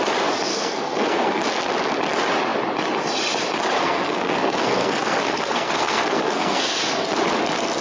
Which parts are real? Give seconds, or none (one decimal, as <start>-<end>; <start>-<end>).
0.0-0.5; 1.4-3.8; 6.8-7.8